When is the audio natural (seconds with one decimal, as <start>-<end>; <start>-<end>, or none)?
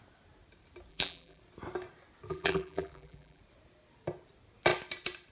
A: 0.0-0.9; 1.4-2.3; 3.4-5.3